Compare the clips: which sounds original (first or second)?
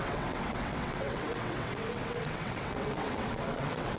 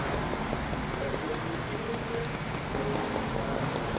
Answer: second